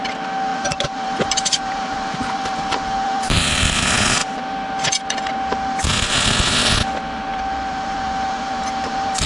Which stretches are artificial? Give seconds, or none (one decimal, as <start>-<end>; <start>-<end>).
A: 0.5-3.8; 4.2-4.9; 7.3-9.3